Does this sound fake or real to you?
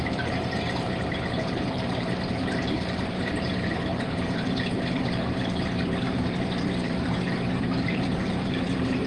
fake